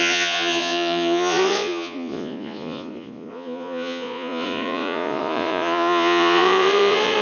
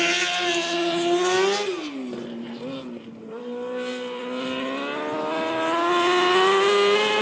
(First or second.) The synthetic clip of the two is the first